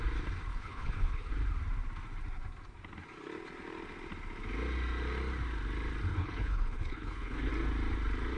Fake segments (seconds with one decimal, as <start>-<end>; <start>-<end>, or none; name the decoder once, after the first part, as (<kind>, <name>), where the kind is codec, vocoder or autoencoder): 0.5-1.3 (codec, HILCodec); 6.1-7.5